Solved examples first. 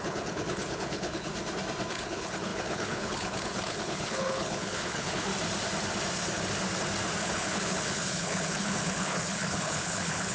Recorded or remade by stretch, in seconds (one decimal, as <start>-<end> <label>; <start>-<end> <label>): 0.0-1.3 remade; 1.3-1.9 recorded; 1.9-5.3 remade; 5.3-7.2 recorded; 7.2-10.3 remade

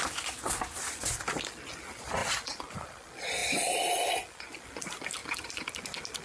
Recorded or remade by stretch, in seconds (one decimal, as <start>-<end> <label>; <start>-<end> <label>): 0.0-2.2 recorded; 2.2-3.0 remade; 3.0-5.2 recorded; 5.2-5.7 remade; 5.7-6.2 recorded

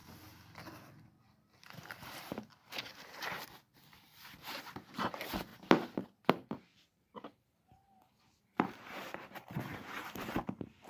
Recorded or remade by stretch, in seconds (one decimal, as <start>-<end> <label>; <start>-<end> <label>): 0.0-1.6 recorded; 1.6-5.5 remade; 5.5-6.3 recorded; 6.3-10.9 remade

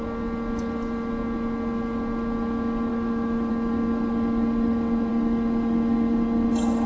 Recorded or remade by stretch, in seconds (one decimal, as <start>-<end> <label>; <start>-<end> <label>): 0.0-2.9 recorded; 2.9-3.5 remade; 3.5-6.9 recorded

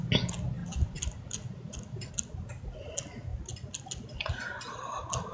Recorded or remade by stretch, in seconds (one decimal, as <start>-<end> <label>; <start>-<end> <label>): 0.0-0.6 recorded; 0.6-2.1 remade; 2.1-5.3 recorded